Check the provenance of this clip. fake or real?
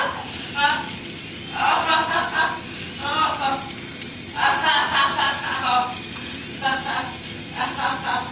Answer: real